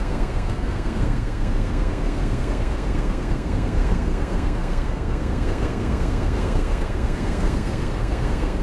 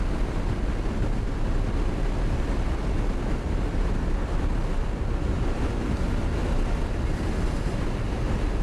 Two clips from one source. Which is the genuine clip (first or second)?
second